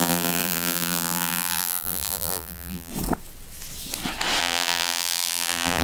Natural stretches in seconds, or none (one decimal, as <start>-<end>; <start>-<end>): 2.9-4.4